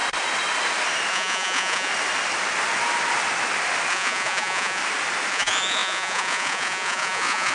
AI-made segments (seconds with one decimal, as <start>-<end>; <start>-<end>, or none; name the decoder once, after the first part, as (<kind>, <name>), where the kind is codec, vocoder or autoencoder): 1.1-1.9 (vocoder, Vocos); 3.9-4.8; 5.3-7.5